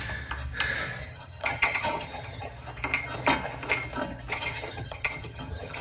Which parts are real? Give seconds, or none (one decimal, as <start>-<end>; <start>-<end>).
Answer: 0.0-1.0; 2.5-4.3